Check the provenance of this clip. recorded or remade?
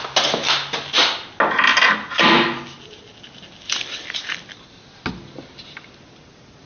recorded